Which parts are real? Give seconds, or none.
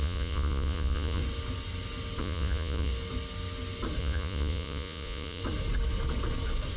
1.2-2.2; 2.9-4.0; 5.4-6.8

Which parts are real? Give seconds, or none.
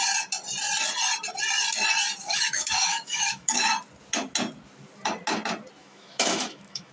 0.0-2.2; 3.7-5.8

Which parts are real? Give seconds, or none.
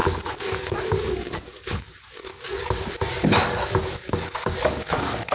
2.9-3.8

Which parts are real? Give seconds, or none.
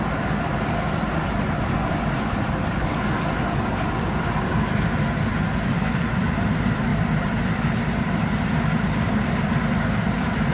0.0-10.5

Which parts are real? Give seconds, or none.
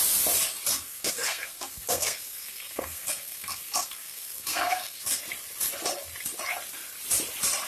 0.0-0.7; 5.2-7.7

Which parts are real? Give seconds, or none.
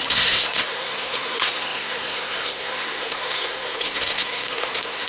none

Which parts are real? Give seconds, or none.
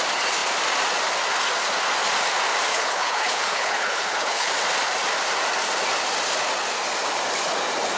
0.0-2.7; 4.5-8.0